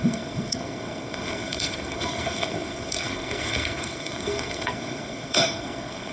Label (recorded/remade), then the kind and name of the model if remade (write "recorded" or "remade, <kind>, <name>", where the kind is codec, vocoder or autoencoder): remade, codec, SNAC